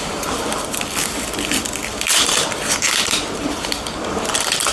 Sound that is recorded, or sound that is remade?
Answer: remade